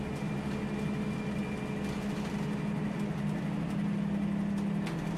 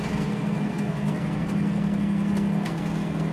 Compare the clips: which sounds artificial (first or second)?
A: second